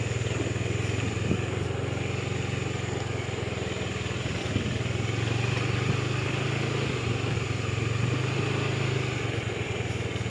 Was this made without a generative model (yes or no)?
yes